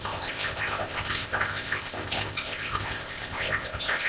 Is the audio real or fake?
fake